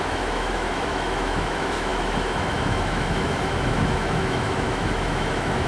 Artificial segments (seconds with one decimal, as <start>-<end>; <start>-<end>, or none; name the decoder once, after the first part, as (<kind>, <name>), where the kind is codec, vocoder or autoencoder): 0.0-5.7 (autoencoder, DAC-VAE)